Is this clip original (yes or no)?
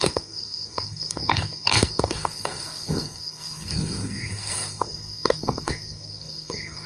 no